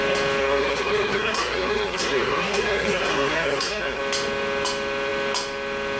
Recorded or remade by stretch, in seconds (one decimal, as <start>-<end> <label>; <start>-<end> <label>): 0.0-0.4 recorded; 0.4-4.0 remade; 4.0-6.0 recorded